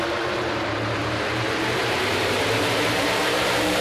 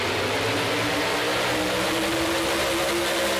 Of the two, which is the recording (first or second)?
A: second